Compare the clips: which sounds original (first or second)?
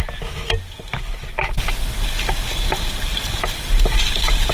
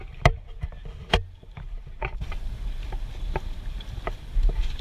first